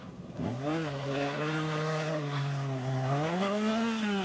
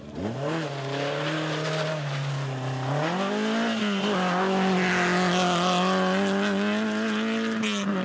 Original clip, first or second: second